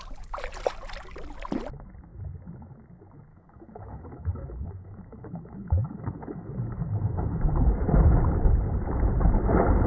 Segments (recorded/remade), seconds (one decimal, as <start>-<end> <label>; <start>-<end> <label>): 0.0-3.3 recorded; 3.3-7.6 remade; 7.6-9.9 recorded